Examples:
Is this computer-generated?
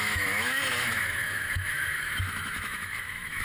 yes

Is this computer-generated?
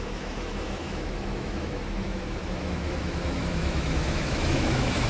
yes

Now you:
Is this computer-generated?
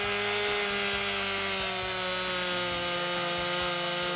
no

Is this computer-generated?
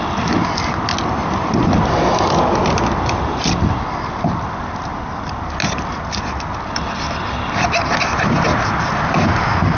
no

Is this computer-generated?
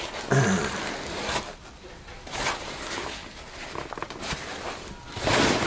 no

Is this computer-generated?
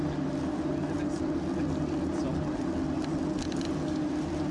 no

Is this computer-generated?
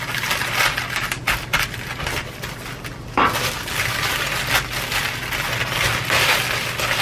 no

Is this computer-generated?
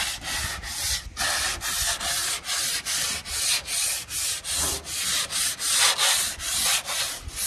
no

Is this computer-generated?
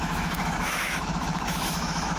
yes